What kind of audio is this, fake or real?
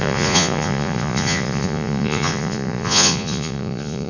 fake